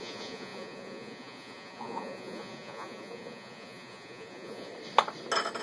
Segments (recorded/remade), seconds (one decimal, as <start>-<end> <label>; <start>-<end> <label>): 0.0-4.7 remade; 4.7-5.6 recorded